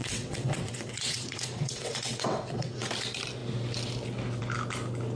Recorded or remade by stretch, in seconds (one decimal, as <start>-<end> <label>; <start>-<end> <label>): 0.0-2.9 remade; 2.9-5.2 recorded